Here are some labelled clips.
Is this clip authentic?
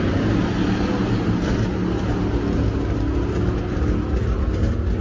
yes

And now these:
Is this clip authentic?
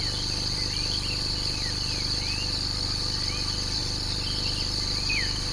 yes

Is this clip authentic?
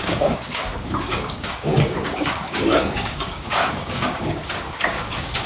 no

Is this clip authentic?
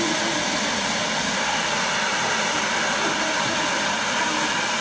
yes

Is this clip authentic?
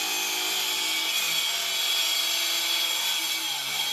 yes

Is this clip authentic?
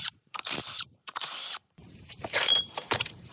no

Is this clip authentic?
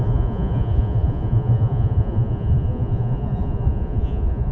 no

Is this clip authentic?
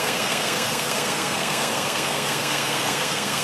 no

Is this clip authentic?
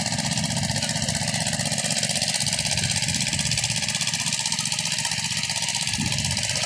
yes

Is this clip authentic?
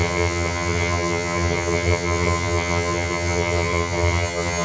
no